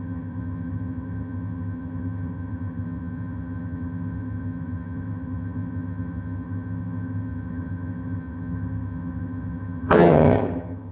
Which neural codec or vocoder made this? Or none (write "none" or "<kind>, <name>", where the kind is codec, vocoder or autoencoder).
vocoder, HiFi-GAN